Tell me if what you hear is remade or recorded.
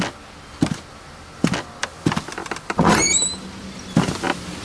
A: recorded